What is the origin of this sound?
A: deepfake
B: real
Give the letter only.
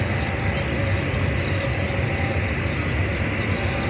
B